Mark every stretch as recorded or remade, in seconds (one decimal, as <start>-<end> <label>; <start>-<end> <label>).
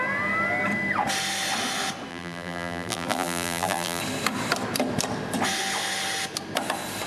0.0-2.1 recorded; 2.1-4.0 remade; 4.0-7.1 recorded